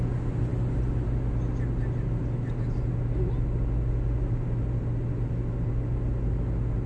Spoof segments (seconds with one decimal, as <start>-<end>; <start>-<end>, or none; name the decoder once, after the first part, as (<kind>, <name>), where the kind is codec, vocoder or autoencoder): none